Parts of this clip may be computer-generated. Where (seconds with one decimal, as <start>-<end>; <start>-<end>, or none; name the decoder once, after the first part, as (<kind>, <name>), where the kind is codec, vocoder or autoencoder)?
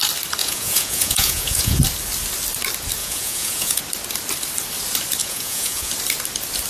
0.4-1.8 (vocoder, Vocos); 3.0-3.8; 5.2-5.9